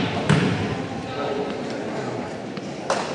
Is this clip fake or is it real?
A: real